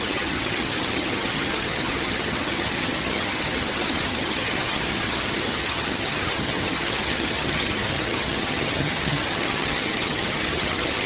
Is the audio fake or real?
fake